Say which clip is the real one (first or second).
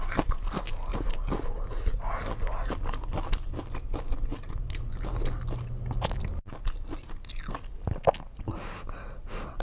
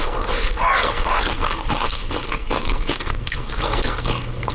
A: first